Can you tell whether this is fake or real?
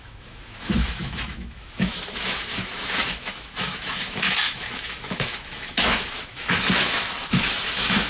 fake